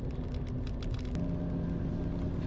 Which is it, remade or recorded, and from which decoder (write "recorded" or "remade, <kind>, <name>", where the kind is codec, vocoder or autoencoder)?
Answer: recorded